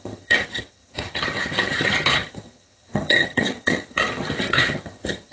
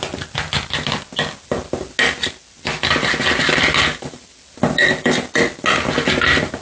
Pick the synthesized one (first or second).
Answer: first